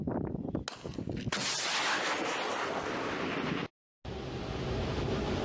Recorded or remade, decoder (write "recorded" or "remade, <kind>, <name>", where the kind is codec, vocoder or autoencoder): recorded